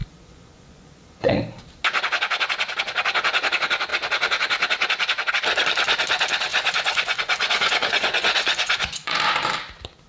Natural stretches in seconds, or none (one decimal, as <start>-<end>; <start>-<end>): 1.4-6.5; 9.2-10.1